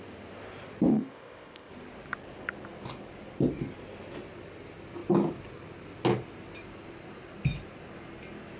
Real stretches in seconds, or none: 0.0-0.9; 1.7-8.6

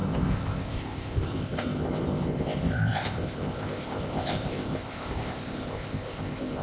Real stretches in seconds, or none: none

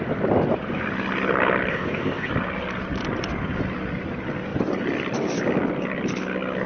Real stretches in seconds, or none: 0.0-1.7; 2.3-6.7